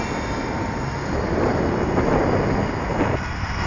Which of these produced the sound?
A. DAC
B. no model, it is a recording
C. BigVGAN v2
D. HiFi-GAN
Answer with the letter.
B